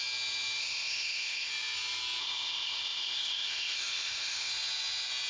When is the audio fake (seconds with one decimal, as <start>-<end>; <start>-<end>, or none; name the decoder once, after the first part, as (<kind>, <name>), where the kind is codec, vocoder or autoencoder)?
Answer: 0.6-1.5 (codec, ZipCodec); 2.2-4.5